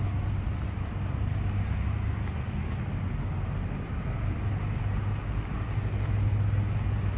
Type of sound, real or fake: real